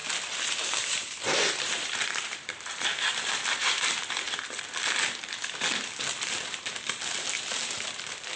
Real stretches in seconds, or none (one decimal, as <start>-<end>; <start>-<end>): 4.6-8.4